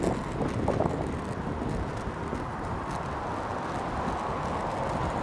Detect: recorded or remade recorded